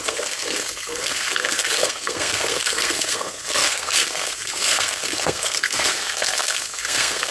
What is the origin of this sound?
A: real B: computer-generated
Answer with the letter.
B